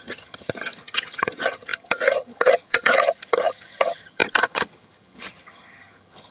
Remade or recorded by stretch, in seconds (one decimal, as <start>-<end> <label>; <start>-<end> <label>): 0.0-6.3 remade